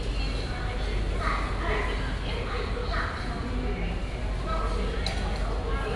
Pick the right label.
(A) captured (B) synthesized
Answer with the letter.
A